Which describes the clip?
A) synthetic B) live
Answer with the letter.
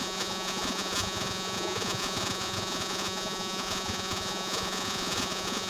A